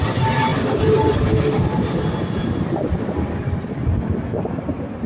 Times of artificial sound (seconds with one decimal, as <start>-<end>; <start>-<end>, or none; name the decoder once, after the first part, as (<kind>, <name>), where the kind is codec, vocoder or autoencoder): none